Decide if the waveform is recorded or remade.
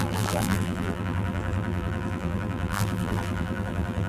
remade